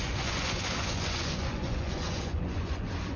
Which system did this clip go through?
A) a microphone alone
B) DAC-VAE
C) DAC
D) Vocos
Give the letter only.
D